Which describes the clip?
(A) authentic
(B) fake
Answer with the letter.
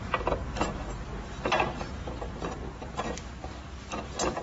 A